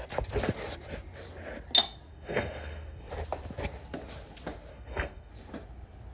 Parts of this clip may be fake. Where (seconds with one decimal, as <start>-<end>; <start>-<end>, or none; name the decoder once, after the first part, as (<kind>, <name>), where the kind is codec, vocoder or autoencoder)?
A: 2.1-3.1 (codec, SNAC); 4.7-5.3

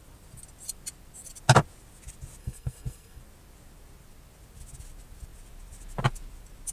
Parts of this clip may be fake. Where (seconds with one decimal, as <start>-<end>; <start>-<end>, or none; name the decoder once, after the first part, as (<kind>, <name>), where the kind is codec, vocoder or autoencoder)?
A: 2.4-3.2 (codec, SNAC)

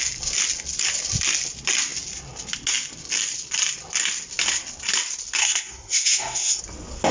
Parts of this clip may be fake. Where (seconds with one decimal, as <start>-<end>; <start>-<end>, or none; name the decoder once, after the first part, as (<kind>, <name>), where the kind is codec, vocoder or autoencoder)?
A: 5.4-6.6 (codec, SNAC)

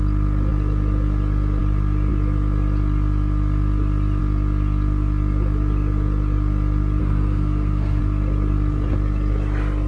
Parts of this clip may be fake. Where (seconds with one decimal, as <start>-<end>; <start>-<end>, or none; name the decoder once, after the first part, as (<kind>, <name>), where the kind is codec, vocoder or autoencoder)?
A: 7.0-8.0 (codec, SNAC)

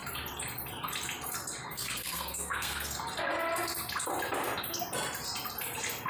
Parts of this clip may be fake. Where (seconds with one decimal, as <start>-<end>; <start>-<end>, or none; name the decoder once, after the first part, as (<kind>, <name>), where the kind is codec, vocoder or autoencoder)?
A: 1.7-3.0 (codec, SNAC)

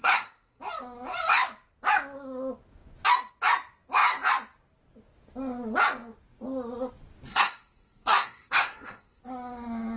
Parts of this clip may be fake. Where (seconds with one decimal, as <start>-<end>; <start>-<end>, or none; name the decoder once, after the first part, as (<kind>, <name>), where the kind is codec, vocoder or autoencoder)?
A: 0.0-0.6 (codec, SNAC); 7.3-9.2

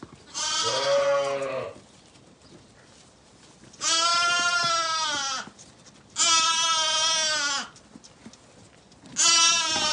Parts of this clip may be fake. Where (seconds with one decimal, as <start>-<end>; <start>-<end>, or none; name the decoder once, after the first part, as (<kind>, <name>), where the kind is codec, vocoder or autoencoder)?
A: none

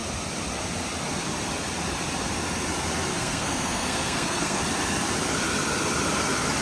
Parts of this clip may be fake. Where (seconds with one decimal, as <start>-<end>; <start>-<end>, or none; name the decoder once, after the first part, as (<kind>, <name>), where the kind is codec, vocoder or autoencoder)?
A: 3.1-4.6 (codec, SNAC)